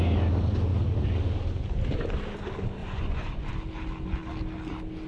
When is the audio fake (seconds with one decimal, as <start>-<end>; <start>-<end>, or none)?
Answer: 2.8-3.5